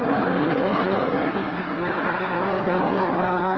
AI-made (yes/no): yes